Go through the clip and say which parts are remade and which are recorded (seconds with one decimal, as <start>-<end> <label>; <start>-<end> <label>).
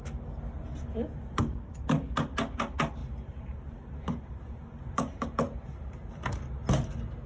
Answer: 0.0-3.0 recorded; 3.0-6.1 remade; 6.1-7.3 recorded